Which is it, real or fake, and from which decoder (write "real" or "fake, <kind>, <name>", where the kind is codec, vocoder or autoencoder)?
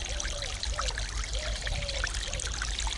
real